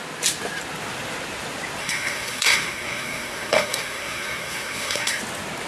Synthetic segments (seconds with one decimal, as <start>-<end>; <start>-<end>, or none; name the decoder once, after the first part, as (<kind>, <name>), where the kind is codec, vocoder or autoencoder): 1.8-5.2 (codec, SNAC)